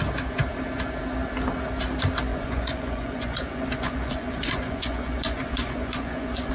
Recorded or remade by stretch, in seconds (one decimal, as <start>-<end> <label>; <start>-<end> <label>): 0.0-2.3 recorded; 2.3-6.5 remade